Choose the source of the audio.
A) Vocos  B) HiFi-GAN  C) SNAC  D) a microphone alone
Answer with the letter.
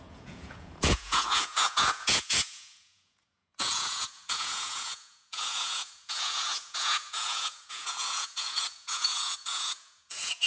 A